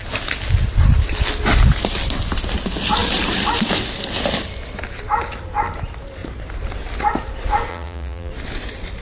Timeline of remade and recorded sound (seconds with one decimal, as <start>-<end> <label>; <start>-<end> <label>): 0.0-7.7 recorded; 7.7-8.3 remade; 8.3-9.0 recorded